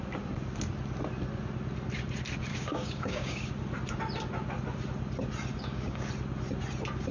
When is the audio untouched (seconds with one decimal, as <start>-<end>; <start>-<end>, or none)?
0.0-2.5; 3.5-5.5; 6.1-7.1